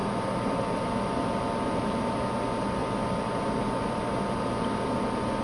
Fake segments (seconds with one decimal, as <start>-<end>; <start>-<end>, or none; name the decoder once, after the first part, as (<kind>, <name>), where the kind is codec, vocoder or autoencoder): none